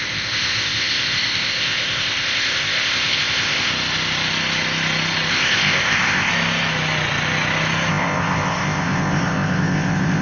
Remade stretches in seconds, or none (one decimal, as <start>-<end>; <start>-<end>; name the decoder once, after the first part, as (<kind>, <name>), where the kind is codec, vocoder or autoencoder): 0.0-3.7 (codec, ZipCodec); 5.3-6.3; 7.9-10.2